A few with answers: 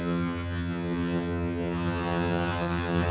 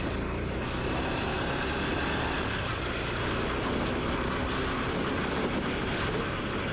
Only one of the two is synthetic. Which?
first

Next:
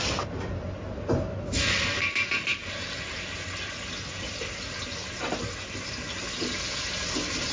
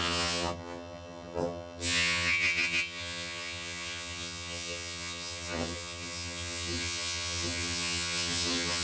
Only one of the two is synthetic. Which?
second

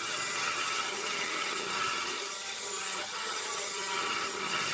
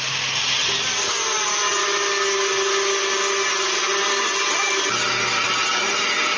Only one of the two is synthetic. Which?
first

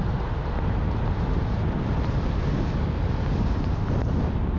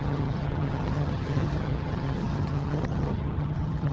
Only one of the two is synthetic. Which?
second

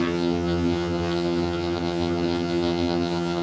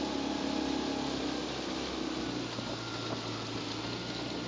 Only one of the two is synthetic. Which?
first